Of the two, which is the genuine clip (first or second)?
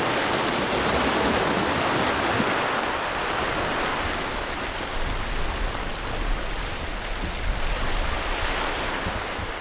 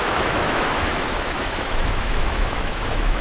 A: first